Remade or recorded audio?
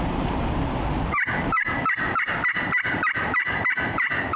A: remade